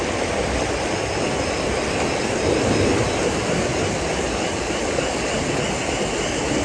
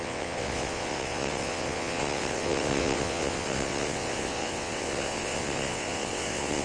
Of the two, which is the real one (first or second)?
first